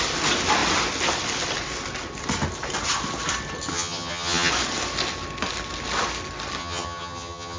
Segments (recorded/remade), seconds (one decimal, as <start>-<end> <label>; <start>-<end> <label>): 0.0-3.7 recorded; 3.7-4.5 remade; 4.5-6.6 recorded; 6.6-7.6 remade